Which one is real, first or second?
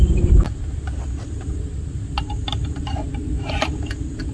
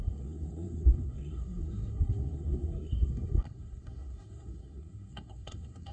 first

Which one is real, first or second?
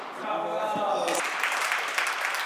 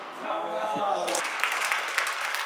first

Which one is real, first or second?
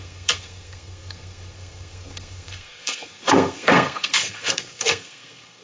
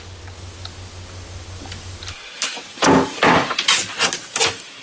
second